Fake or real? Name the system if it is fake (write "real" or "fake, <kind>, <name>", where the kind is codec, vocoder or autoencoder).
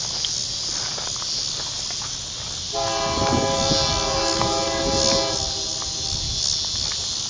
real